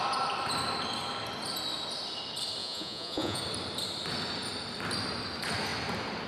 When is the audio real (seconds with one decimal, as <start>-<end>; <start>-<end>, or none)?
0.0-2.6; 3.4-6.3